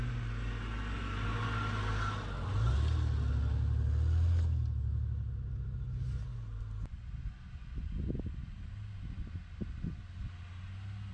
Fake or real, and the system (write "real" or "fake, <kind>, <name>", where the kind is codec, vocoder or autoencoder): real